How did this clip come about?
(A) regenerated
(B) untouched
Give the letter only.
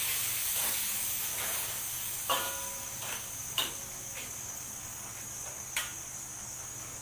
A